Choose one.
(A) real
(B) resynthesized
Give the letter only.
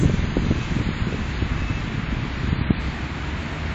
A